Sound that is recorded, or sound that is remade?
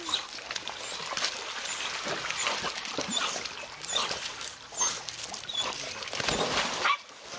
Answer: recorded